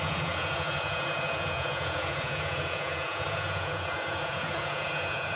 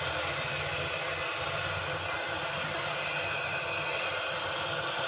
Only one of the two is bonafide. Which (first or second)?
second